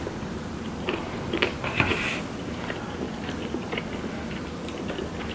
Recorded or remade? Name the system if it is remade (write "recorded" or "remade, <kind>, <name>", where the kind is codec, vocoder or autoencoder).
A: remade, vocoder, BigVGAN v2